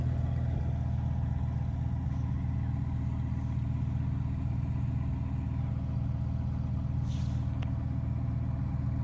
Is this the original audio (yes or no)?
yes